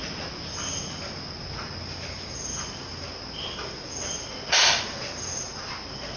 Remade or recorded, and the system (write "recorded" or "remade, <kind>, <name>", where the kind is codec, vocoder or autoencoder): recorded